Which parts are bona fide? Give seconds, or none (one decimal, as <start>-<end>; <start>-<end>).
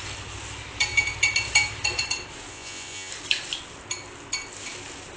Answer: 0.0-2.5; 3.1-5.2